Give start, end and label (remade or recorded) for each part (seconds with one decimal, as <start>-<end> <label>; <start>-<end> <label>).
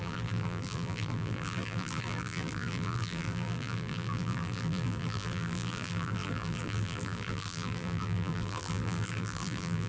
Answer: 0.0-9.9 remade